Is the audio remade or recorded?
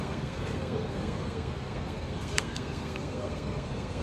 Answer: remade